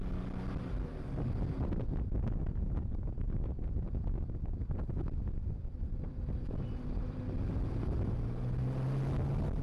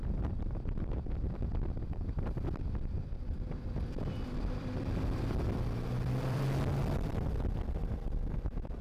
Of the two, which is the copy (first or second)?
second